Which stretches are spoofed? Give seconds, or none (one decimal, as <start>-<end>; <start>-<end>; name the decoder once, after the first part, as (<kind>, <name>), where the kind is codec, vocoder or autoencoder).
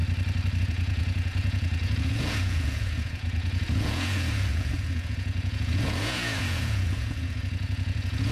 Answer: 0.6-8.3 (vocoder, Vocos)